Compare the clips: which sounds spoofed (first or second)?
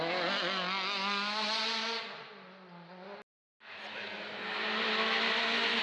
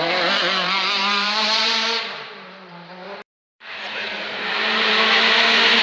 second